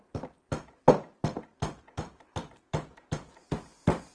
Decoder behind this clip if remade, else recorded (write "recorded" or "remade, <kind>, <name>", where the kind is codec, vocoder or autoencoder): remade, vocoder, BigVGAN v2